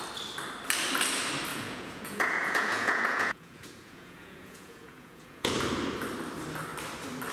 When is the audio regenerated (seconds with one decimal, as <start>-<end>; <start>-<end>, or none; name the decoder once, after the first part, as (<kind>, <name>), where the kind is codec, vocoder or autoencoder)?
1.5-5.5 (vocoder, Vocos)